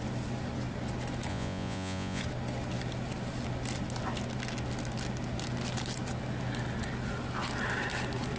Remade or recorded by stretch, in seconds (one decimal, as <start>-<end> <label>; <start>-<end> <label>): 0.0-1.3 recorded; 1.3-2.2 remade; 2.2-8.4 recorded